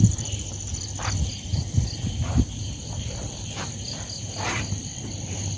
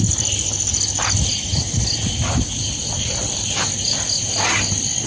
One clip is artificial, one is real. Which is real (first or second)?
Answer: second